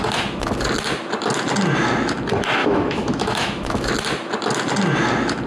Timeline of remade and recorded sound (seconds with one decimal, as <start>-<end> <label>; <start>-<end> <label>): 0.0-2.6 recorded; 2.6-3.9 remade; 3.9-5.5 recorded